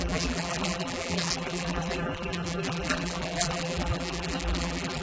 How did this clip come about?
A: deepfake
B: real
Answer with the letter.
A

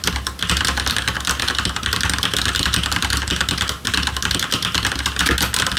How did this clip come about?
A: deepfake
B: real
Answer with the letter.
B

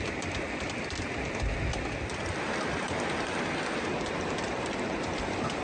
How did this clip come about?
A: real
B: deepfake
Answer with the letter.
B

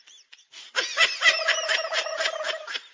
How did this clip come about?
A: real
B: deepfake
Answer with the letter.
B